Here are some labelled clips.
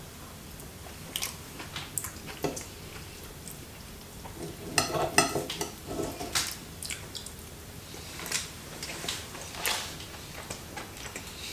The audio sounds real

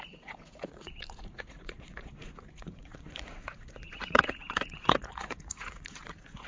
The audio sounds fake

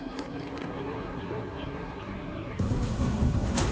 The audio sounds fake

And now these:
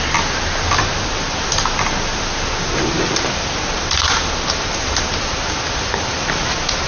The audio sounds real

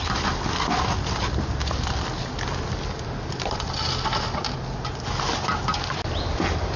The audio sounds real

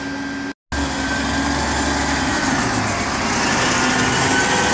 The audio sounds real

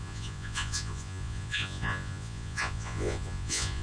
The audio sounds fake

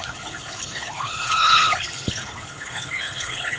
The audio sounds fake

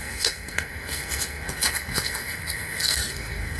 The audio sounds fake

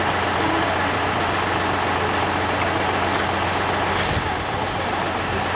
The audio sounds real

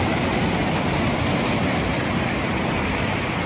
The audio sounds real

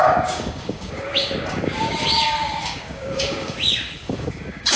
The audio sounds fake